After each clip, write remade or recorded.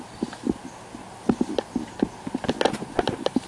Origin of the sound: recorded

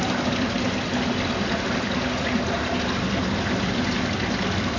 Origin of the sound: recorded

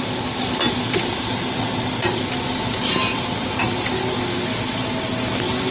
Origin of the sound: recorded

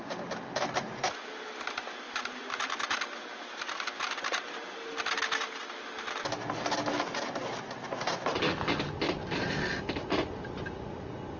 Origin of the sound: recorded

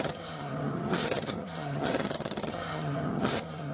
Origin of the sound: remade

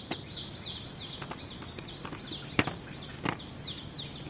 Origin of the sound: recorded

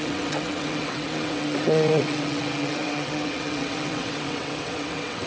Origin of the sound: remade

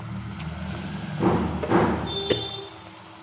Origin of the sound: recorded